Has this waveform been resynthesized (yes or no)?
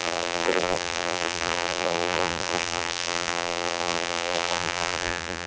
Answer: yes